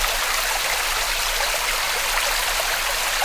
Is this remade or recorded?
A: recorded